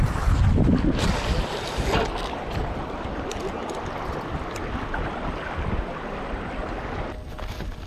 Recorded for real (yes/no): yes